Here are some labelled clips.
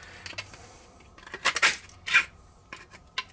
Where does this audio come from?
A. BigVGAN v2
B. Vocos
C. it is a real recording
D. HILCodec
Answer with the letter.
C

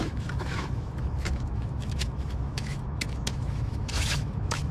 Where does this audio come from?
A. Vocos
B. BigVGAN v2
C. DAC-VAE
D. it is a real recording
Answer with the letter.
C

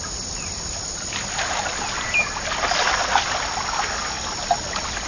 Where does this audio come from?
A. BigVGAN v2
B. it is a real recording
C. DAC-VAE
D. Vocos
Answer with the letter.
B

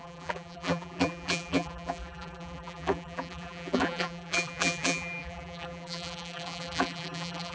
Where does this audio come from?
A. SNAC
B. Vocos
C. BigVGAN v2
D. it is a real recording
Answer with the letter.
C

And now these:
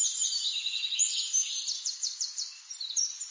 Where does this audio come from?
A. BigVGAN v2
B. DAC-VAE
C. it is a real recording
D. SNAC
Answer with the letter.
A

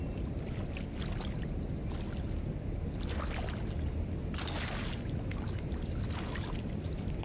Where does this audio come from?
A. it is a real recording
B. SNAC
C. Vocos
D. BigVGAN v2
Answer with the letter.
A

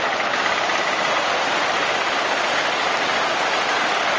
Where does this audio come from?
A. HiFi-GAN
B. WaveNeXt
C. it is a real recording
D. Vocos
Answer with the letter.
C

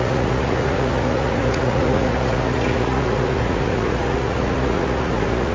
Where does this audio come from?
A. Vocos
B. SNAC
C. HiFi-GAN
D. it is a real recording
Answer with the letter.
A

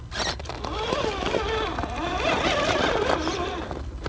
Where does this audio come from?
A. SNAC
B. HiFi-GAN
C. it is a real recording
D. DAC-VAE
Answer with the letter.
C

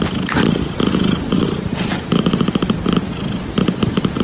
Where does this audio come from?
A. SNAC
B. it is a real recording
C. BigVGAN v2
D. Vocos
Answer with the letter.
B